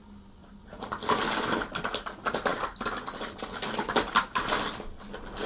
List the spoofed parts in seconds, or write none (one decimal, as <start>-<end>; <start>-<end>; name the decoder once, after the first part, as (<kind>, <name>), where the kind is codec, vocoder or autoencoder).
0.4-0.9 (vocoder, BigVGAN v2)